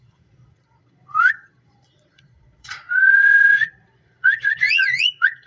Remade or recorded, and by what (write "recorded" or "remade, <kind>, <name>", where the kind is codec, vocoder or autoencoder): remade, vocoder, Vocos